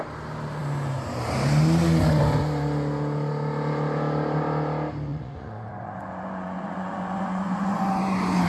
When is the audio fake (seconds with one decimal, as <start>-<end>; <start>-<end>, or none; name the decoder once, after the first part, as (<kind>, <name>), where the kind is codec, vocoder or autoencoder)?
5.1-8.0 (vocoder, Vocos)

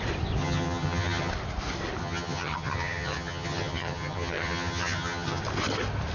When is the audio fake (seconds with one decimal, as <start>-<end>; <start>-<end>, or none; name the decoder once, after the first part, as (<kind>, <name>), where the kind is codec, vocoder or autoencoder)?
0.4-1.3 (vocoder, HiFi-GAN); 2.0-5.4